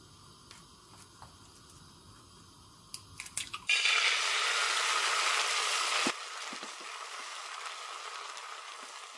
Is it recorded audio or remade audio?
recorded